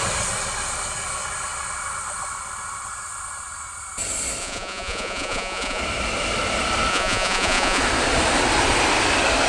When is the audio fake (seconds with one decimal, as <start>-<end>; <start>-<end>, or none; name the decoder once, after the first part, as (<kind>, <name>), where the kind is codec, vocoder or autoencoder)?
4.4-5.8 (vocoder, Vocos); 6.9-7.8